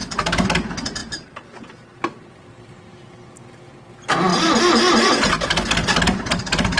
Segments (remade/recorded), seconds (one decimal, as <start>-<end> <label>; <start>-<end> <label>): 0.0-1.0 recorded; 1.0-2.4 remade; 2.4-6.8 recorded